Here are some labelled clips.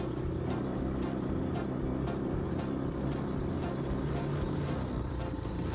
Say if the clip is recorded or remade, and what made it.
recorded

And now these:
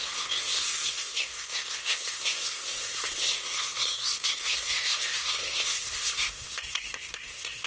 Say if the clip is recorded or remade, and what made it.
remade, codec, SNAC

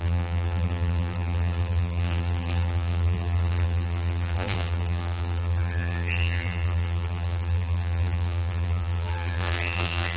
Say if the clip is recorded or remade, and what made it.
remade, vocoder, BigVGAN v2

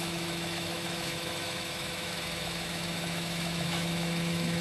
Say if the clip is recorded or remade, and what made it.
remade, autoencoder, DAC-VAE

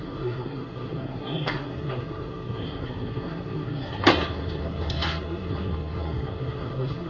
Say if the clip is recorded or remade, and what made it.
remade, codec, SNAC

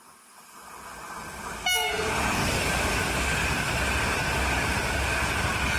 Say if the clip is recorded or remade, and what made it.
recorded